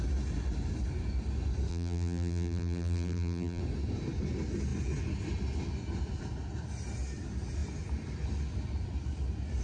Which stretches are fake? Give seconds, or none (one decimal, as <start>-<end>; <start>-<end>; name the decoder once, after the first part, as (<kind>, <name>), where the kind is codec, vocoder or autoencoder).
1.7-3.6 (vocoder, BigVGAN v2)